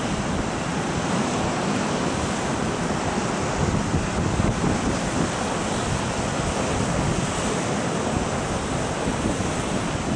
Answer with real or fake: real